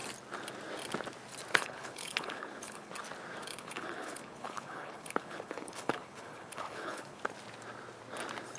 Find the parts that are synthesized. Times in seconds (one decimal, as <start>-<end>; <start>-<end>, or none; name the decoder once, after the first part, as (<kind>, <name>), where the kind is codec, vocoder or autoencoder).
1.5-2.9 (codec, HILCodec); 3.4-7.2